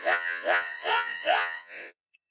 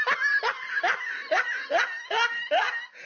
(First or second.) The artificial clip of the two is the first